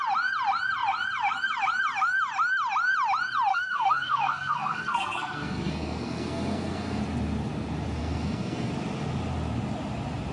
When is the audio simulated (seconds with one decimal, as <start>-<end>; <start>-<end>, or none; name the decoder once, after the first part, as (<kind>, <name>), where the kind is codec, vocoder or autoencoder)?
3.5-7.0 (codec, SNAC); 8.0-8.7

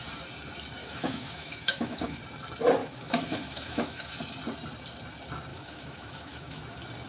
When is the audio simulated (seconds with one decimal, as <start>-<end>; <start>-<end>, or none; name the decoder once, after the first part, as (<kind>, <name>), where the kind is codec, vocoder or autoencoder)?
0.8-2.2 (autoencoder, DAC-VAE); 2.8-4.1; 5.5-6.6

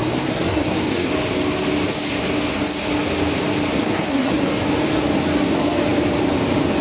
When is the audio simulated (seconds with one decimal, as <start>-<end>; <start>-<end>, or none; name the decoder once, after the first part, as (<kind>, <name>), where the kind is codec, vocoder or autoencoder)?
0.0-1.1 (codec, SNAC); 3.8-4.3